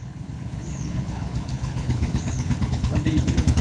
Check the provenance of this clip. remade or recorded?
remade